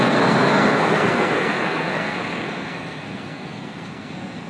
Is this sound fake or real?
fake